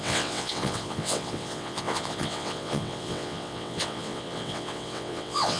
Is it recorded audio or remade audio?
remade